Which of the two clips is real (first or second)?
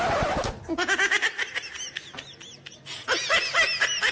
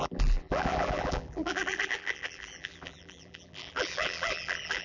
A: first